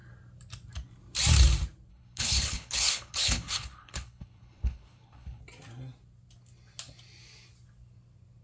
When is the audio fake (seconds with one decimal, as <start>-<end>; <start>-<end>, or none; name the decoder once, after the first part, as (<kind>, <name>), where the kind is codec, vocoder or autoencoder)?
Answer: 1.9-5.4 (codec, HILCodec)